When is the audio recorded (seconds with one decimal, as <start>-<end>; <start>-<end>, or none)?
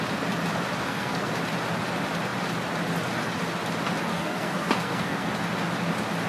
0.0-0.8; 1.3-4.1; 5.3-6.3